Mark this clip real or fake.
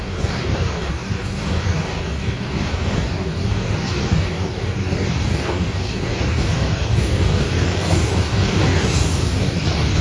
fake